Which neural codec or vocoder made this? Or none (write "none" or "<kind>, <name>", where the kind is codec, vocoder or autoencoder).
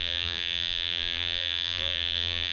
vocoder, BigVGAN v2